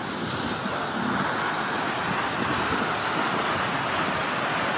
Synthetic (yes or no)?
no